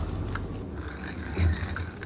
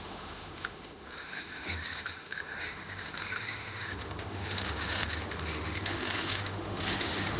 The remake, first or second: second